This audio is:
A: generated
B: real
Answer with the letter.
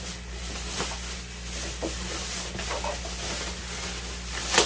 B